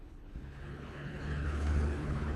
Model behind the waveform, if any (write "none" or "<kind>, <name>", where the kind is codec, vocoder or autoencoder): codec, HILCodec